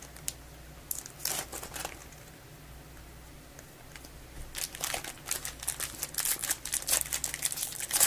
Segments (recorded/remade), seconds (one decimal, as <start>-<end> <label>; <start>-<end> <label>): 0.0-8.1 recorded